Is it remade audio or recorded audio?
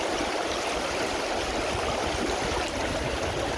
recorded